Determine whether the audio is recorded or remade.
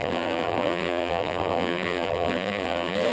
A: remade